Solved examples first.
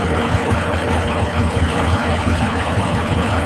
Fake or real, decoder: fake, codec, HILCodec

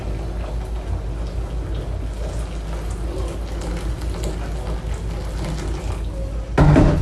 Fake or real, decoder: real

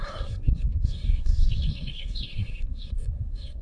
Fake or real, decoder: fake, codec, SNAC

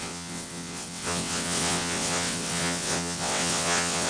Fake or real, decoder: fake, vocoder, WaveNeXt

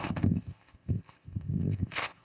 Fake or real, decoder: fake, codec, ZipCodec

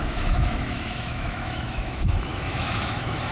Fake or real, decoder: fake, autoencoder, DAC-VAE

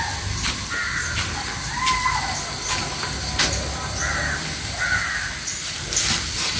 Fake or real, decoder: real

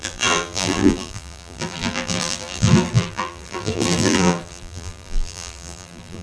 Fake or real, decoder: fake, vocoder, BigVGAN v2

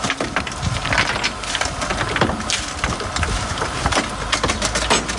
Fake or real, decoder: real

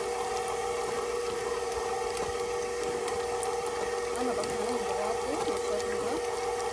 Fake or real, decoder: real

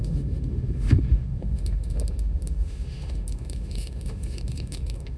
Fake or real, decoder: fake, autoencoder, DAC-VAE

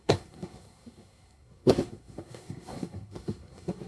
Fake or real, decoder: fake, codec, SNAC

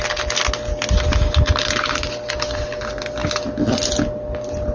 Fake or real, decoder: real